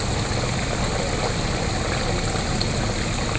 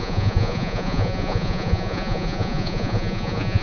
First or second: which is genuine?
first